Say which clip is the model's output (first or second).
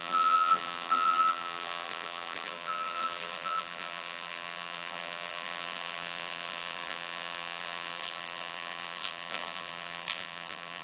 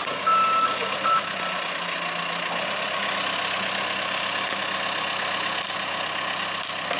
first